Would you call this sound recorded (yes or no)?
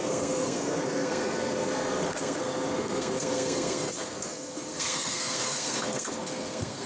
no